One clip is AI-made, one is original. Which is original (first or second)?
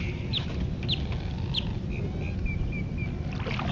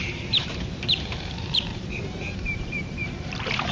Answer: first